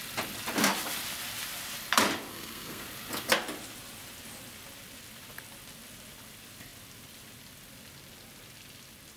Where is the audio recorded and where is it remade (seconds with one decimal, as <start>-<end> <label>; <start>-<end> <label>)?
0.0-2.3 recorded; 2.3-2.8 remade; 2.8-9.2 recorded